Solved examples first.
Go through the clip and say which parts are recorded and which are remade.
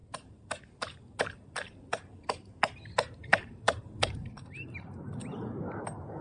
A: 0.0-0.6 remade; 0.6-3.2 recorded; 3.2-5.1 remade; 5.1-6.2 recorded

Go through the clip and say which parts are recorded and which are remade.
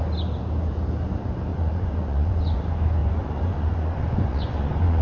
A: 0.0-1.5 recorded; 1.5-2.6 remade; 2.6-3.0 recorded; 3.0-5.0 remade